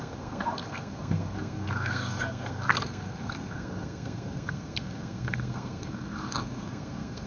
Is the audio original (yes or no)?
no